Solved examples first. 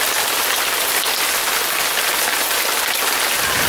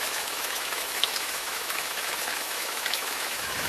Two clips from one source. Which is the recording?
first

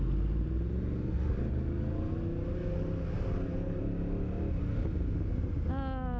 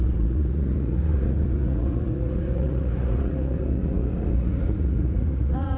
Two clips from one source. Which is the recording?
first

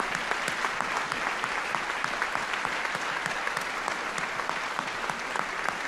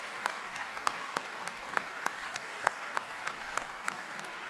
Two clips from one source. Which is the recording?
first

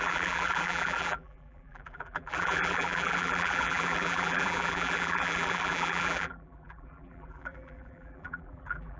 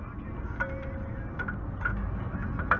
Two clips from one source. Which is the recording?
second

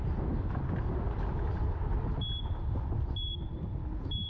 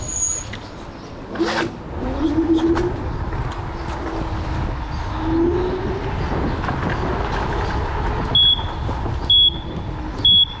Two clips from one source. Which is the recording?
second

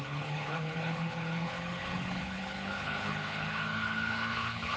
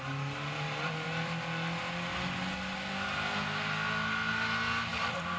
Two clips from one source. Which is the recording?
second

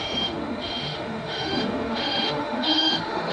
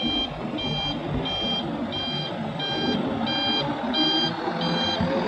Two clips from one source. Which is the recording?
second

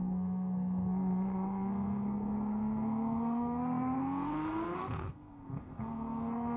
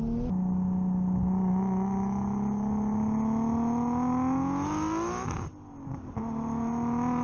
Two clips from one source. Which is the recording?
second